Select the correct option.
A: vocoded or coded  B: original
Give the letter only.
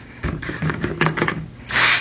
A